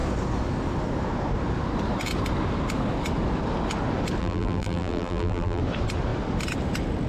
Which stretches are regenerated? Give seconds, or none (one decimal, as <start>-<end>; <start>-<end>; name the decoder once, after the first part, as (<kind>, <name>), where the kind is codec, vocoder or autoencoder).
4.2-5.6 (vocoder, BigVGAN v2)